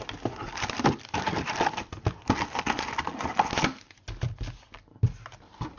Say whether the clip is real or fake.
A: real